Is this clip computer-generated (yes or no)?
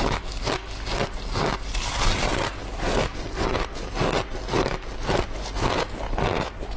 no